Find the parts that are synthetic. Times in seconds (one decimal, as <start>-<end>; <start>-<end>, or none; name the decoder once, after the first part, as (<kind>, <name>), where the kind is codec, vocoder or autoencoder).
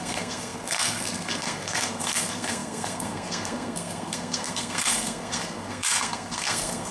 0.0-6.9 (codec, SNAC)